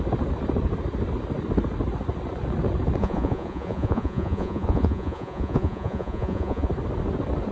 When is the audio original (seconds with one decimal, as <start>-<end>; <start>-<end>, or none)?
0.0-3.0; 6.7-7.5